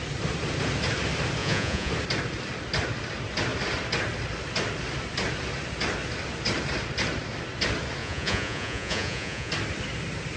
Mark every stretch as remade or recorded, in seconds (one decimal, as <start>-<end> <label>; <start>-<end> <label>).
0.0-1.4 recorded; 1.4-1.9 remade; 1.9-8.0 recorded; 8.0-9.5 remade; 9.5-10.4 recorded